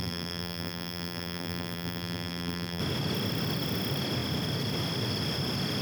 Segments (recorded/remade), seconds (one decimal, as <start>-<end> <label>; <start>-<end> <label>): 0.0-2.8 remade; 2.8-5.8 recorded